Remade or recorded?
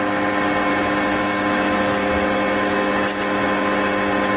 recorded